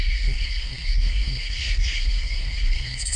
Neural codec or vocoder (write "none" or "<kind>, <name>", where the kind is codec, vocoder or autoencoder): codec, SNAC